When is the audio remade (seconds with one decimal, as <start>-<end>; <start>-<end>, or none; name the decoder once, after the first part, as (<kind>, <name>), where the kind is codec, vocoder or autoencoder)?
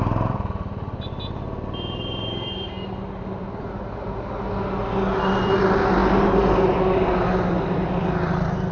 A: none